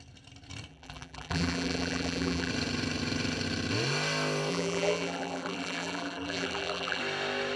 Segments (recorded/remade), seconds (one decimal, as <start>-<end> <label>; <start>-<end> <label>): 0.0-0.7 recorded; 0.7-2.5 remade; 2.5-4.5 recorded; 4.5-7.0 remade; 7.0-7.6 recorded